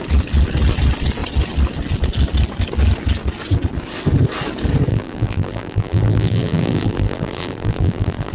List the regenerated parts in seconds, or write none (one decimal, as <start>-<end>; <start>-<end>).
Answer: 4.9-8.3